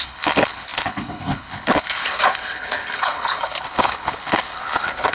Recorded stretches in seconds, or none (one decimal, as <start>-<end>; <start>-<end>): none